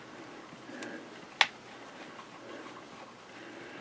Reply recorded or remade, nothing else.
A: recorded